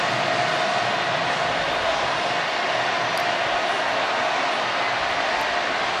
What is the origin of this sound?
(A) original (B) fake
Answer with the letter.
A